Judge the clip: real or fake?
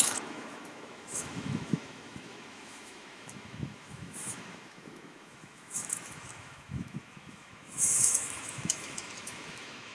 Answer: fake